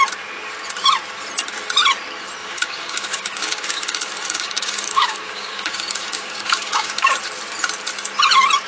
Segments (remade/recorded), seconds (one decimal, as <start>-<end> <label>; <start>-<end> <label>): 0.0-2.4 recorded; 2.4-7.1 remade; 7.1-8.7 recorded